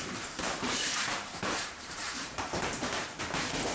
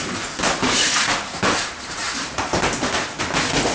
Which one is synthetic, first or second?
first